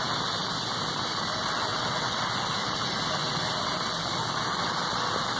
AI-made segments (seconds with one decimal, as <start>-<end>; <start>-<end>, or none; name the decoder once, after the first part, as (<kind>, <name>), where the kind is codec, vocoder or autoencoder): 1.7-2.2 (vocoder, WaveNeXt)